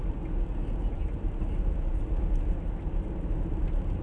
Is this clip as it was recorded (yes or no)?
yes